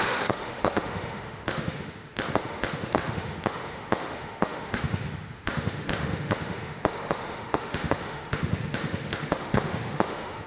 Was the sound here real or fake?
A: fake